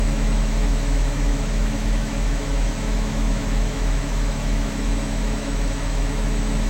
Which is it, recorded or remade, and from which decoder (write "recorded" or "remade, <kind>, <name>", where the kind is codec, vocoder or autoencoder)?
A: remade, autoencoder, DAC-VAE